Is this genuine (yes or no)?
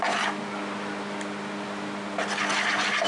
yes